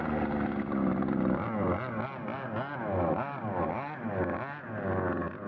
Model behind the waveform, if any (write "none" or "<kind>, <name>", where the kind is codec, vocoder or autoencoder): none